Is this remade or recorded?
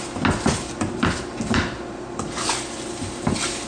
recorded